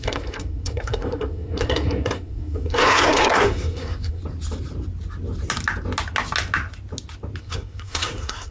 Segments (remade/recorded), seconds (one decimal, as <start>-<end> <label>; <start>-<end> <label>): 0.0-4.2 remade; 4.2-7.4 recorded; 7.4-8.5 remade